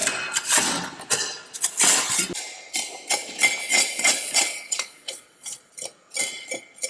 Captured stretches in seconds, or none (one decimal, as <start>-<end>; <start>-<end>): 0.0-3.6; 5.7-6.9